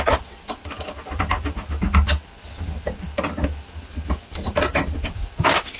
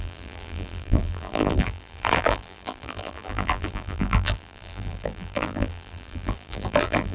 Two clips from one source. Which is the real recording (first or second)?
first